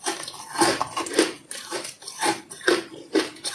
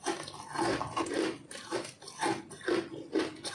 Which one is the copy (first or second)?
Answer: first